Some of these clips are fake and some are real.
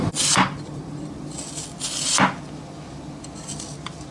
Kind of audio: real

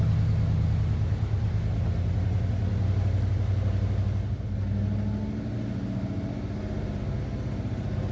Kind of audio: real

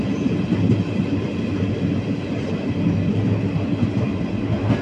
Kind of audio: real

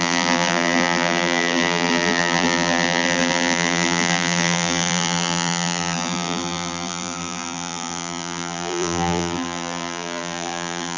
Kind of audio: fake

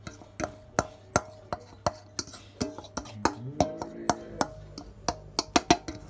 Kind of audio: real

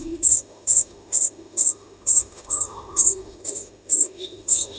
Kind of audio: fake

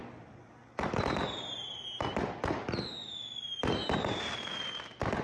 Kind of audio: real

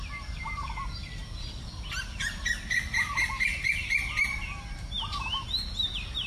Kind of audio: real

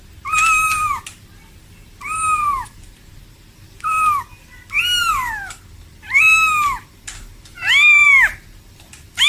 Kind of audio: real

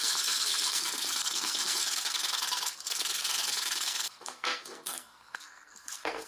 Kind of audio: fake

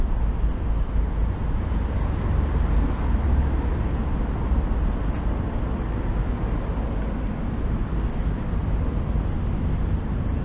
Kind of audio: real